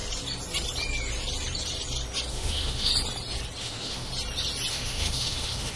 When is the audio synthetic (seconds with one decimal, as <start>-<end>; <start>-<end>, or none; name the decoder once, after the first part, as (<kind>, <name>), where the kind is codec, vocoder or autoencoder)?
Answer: 2.3-2.9 (autoencoder, DAC-VAE); 3.6-4.1; 4.7-5.8